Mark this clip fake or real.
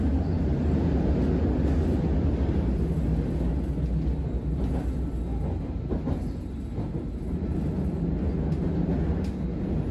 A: real